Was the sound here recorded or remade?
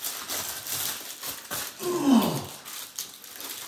recorded